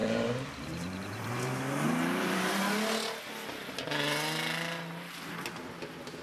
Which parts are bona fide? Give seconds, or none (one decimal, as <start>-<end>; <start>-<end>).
2.6-6.2